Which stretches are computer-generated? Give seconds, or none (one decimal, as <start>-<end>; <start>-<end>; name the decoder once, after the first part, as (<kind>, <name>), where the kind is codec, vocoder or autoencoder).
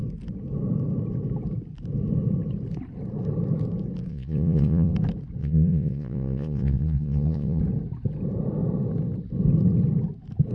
4.1-4.9 (vocoder, Vocos); 5.4-7.6